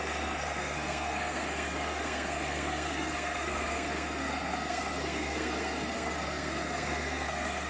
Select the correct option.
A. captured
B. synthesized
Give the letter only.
B